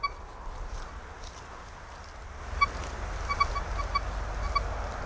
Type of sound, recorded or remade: recorded